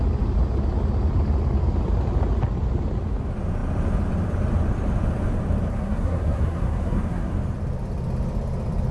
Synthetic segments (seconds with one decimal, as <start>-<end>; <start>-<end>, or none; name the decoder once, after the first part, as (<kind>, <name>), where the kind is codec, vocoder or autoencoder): 5.7-7.3 (codec, SNAC)